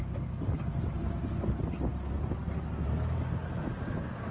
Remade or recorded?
recorded